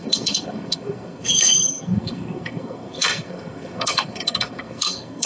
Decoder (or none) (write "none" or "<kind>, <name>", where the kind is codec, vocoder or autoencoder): codec, SNAC